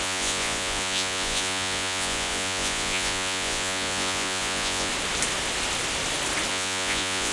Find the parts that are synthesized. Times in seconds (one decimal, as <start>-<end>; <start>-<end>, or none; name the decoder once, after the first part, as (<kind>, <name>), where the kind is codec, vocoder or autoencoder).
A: 0.0-4.9 (vocoder, Vocos); 6.5-7.3